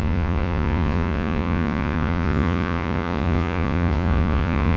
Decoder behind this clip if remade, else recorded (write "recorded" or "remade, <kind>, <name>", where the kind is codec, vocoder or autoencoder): remade, vocoder, Vocos